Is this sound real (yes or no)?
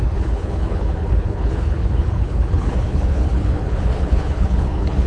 no